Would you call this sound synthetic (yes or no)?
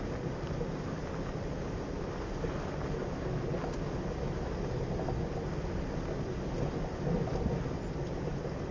no